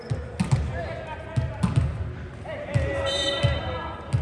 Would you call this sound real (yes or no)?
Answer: yes